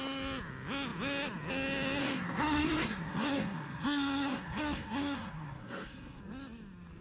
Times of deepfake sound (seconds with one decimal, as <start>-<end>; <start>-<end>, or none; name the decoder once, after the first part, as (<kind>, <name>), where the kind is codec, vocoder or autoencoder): 2.0-6.2 (codec, SNAC)